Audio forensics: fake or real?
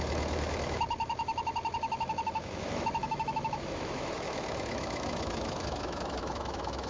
fake